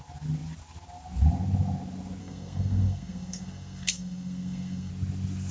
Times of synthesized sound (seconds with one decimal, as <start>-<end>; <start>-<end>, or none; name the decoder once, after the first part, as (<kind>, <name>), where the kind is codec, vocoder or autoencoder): 2.2-4.9 (codec, SNAC)